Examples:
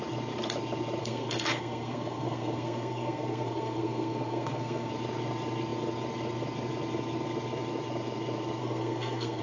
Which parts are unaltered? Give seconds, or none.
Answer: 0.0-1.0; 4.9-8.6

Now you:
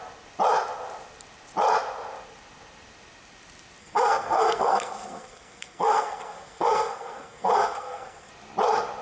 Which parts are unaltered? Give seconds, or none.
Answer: 0.0-3.8; 8.3-9.0